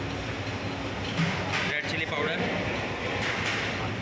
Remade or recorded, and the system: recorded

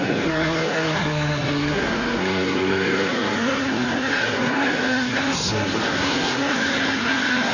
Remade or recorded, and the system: remade, codec, SNAC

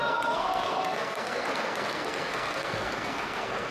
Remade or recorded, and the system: remade, codec, SNAC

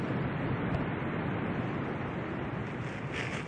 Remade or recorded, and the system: recorded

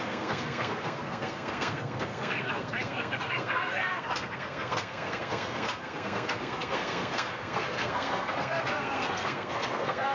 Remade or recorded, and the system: remade, codec, SNAC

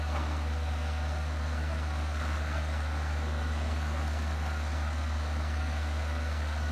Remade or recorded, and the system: remade, codec, SNAC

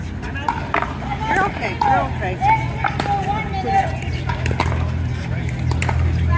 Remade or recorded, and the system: recorded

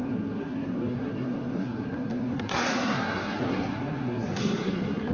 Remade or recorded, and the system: remade, codec, SNAC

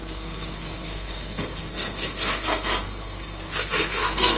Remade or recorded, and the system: remade, codec, SNAC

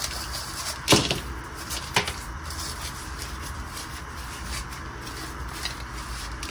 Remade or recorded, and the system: recorded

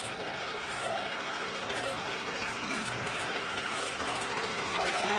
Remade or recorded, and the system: remade, codec, SNAC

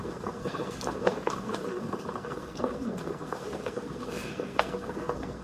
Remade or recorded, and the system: remade, codec, SNAC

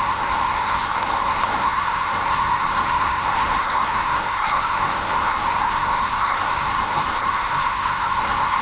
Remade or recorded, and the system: remade, codec, SNAC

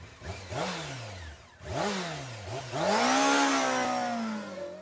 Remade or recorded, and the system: recorded